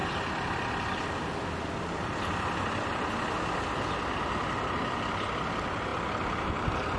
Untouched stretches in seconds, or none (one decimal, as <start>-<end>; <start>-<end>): 0.0-7.0